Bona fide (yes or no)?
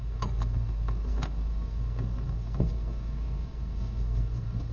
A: no